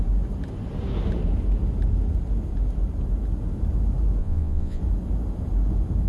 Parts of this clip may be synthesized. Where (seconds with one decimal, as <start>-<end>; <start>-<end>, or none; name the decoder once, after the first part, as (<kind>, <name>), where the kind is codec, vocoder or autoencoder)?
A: 4.2-4.8 (vocoder, Vocos)